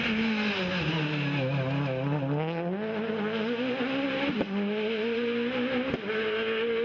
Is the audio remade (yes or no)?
no